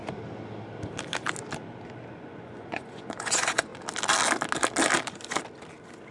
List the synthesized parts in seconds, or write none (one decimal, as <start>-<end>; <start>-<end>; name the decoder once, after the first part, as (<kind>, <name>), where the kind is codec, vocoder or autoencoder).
2.1-3.7 (vocoder, Vocos)